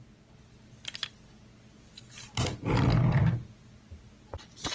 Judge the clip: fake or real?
real